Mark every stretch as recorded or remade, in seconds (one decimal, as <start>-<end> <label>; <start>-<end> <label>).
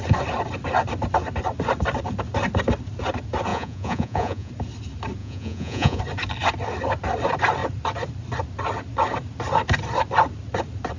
0.0-3.5 recorded; 3.5-4.5 remade; 4.5-5.2 recorded; 5.2-6.0 remade; 6.0-11.0 recorded